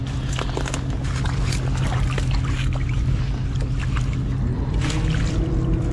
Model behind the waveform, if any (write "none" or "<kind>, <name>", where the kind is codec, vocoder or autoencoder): none